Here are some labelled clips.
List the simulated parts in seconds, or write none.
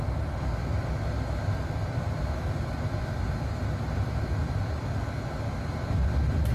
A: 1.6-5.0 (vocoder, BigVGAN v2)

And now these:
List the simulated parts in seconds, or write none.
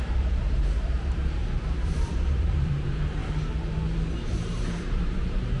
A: 0.0-3.2 (vocoder, BigVGAN v2); 4.2-5.6